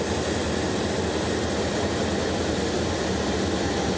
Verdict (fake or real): real